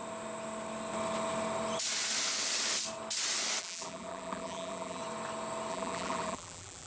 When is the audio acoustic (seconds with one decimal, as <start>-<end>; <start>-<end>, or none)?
0.0-3.6; 5.0-5.7